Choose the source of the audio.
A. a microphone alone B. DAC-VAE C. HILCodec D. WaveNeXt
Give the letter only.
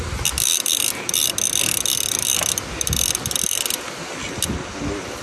A